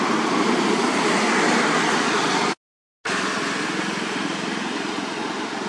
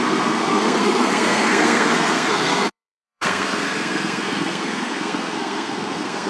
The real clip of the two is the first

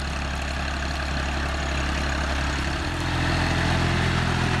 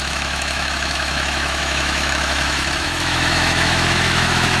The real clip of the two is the first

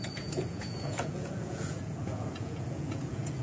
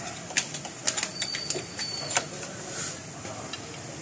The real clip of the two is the second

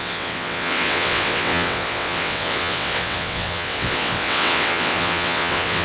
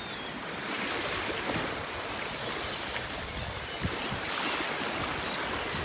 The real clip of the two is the second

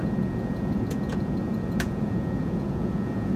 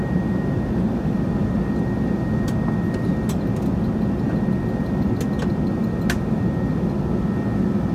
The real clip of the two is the second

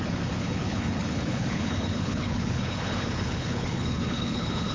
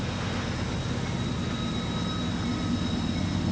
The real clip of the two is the second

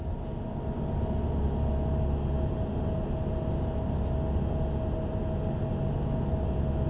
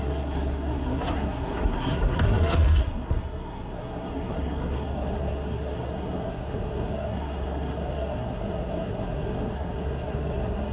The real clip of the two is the first